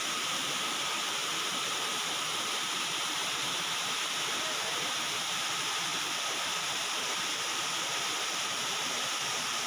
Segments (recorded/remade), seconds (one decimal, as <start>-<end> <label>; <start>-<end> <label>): 0.0-5.9 remade; 5.9-6.6 recorded; 6.6-9.7 remade